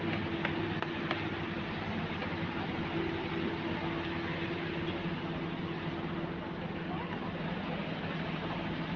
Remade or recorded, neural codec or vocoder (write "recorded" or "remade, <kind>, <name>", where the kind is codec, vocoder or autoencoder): recorded